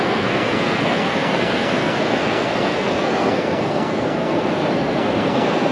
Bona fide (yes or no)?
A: no